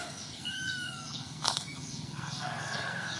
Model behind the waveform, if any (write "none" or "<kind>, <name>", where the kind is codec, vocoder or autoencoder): codec, SNAC